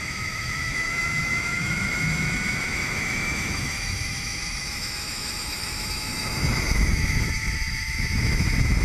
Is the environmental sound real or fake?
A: fake